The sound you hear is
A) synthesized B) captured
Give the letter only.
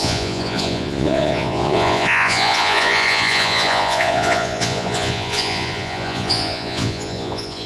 A